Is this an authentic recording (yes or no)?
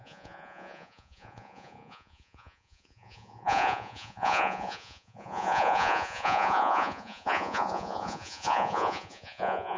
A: no